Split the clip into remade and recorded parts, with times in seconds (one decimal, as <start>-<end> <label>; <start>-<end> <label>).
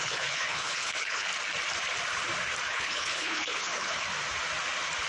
0.0-1.3 remade; 1.3-2.7 recorded; 2.7-4.1 remade; 4.1-5.1 recorded